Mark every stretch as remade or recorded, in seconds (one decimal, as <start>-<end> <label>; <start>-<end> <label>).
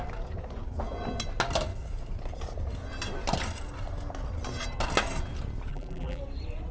0.0-5.7 recorded; 5.7-6.2 remade; 6.2-6.7 recorded